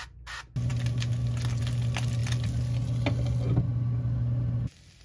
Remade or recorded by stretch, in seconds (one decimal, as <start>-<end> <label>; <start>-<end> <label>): 0.0-5.0 recorded